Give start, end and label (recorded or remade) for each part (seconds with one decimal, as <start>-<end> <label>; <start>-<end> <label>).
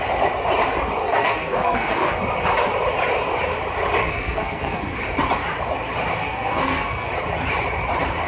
0.0-1.0 recorded; 1.0-2.2 remade; 2.2-4.0 recorded; 4.0-4.8 remade; 4.8-6.2 recorded; 6.2-7.1 remade; 7.1-8.3 recorded